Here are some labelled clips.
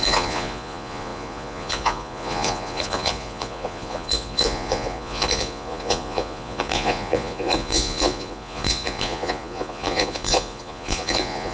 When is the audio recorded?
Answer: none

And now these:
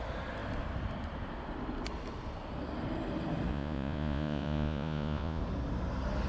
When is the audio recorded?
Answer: 0.0-3.5; 5.4-6.3